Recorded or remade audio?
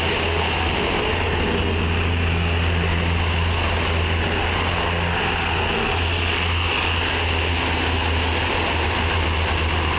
recorded